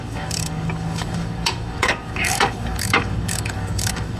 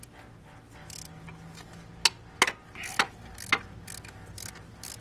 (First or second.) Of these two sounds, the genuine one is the second